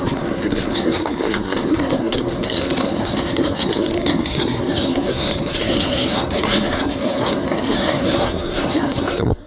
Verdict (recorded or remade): remade